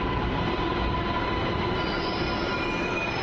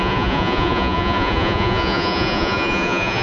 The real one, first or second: first